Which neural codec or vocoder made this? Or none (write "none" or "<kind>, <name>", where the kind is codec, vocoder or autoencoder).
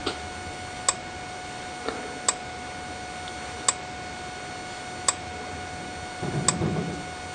none